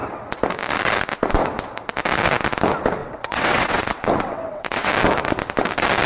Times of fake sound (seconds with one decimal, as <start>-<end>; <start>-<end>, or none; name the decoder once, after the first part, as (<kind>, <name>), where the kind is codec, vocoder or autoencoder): 3.0-4.9 (vocoder, WaveNeXt)